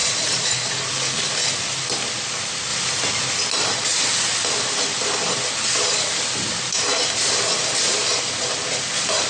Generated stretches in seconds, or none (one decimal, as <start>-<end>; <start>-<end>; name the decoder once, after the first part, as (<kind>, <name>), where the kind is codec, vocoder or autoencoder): 0.0-0.7 (vocoder, BigVGAN v2); 2.7-3.4